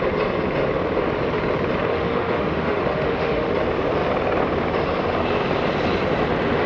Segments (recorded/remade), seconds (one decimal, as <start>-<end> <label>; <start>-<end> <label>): 0.0-1.9 recorded; 1.9-3.5 remade; 3.5-6.7 recorded